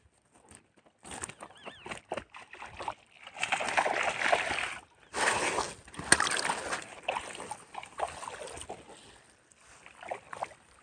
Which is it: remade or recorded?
recorded